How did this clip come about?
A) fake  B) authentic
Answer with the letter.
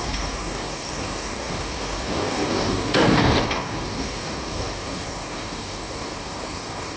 A